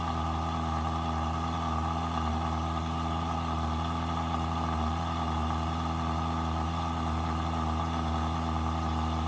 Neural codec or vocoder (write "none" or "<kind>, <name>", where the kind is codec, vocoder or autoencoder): none